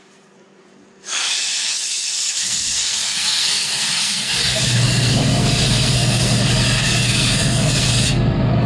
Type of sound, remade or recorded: remade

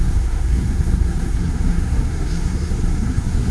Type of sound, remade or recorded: remade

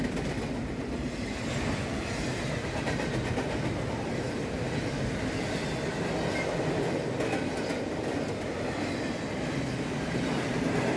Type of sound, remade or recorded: recorded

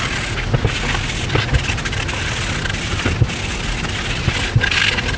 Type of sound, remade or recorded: recorded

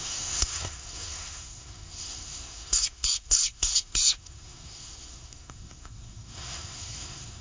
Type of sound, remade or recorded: remade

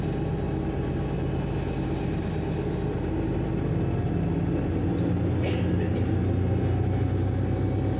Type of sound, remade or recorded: recorded